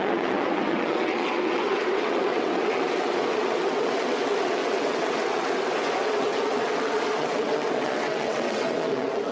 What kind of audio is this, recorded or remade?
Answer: remade